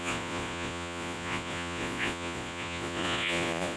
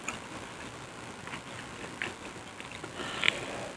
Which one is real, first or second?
second